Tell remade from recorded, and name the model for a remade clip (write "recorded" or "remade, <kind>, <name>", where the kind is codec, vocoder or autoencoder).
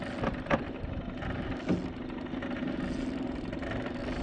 recorded